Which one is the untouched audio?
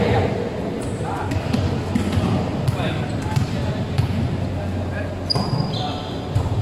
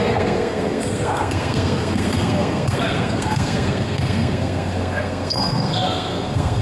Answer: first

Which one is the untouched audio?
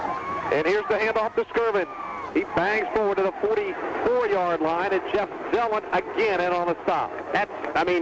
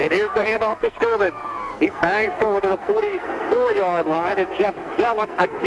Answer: first